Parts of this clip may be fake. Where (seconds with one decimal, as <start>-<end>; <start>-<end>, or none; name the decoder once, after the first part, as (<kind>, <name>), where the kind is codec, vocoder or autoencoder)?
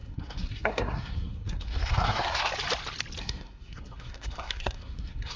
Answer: 0.0-2.5 (codec, SNAC); 3.2-5.4